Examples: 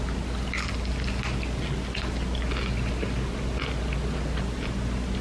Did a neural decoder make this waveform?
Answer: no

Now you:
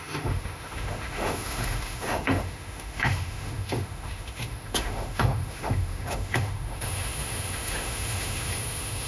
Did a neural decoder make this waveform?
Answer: yes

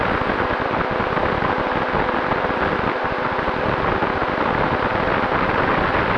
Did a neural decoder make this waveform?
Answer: no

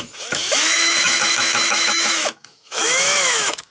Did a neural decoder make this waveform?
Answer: yes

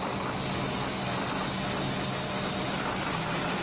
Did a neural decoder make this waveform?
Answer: no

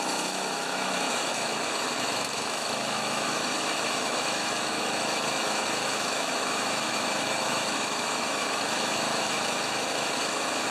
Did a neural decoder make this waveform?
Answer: yes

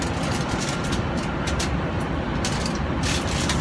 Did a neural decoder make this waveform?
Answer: no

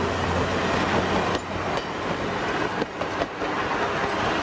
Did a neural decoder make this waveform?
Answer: no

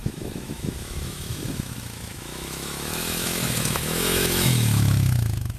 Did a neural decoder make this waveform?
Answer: yes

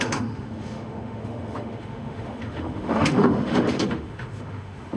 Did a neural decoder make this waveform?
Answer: yes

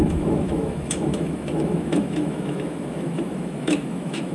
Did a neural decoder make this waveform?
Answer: yes